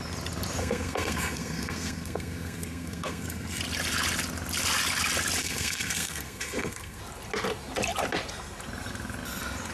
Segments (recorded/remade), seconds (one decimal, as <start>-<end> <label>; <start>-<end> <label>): 0.0-0.6 recorded; 0.6-3.6 remade; 3.6-5.4 recorded; 5.4-7.0 remade; 7.0-9.7 recorded